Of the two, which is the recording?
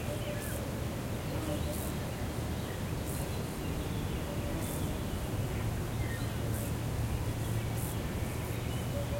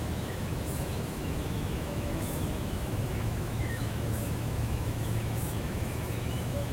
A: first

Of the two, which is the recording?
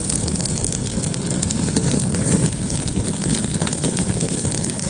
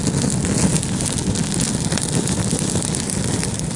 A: second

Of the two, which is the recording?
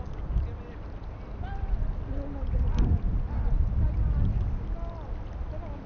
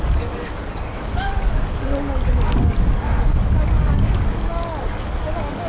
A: first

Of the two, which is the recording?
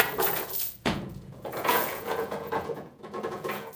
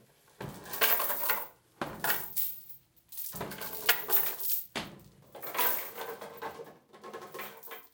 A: second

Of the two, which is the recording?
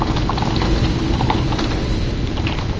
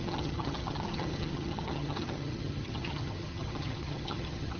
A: first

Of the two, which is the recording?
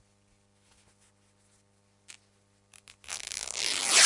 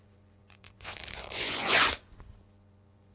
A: first